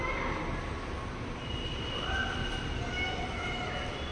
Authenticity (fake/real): real